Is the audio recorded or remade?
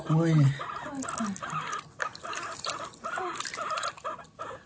recorded